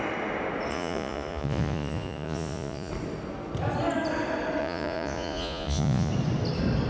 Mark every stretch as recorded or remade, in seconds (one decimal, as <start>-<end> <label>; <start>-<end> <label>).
0.0-0.7 recorded; 0.7-2.9 remade; 2.9-4.6 recorded; 4.6-6.1 remade; 6.1-6.9 recorded